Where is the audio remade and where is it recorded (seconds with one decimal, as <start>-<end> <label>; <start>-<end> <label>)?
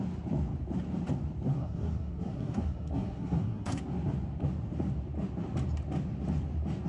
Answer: 0.0-1.5 recorded; 1.5-3.8 remade; 3.8-6.9 recorded